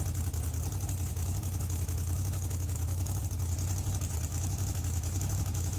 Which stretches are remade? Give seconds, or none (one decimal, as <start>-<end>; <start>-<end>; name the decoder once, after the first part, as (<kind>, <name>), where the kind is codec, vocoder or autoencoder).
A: 1.1-3.2 (autoencoder, DAC-VAE); 4.3-5.8